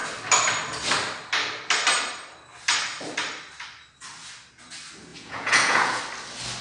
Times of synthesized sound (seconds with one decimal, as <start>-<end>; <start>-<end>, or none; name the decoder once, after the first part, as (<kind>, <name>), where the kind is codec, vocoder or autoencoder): 5.1-6.0 (vocoder, Vocos)